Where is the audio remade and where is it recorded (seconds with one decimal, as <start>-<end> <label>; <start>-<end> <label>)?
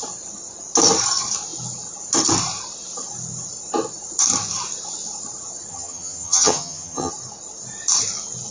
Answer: 0.0-5.7 recorded; 5.7-7.1 remade; 7.1-8.5 recorded